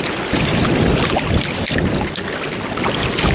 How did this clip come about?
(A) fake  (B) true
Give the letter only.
B